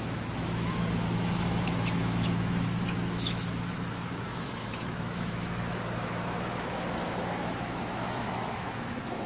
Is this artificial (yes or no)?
yes